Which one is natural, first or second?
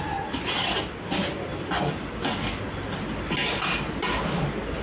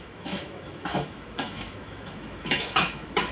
first